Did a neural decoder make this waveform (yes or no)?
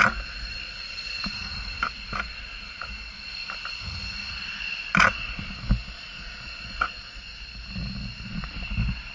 no